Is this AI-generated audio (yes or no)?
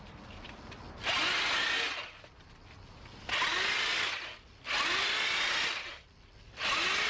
no